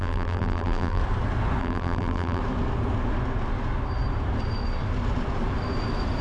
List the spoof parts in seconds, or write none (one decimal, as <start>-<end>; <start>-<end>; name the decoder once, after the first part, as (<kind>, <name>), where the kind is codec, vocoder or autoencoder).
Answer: 0.0-1.0 (vocoder, BigVGAN v2); 1.6-2.4